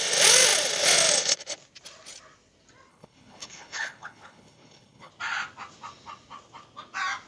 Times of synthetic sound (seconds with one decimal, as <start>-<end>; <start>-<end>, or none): 2.9-5.1